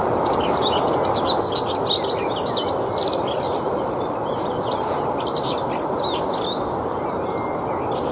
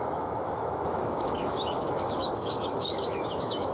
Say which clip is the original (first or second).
first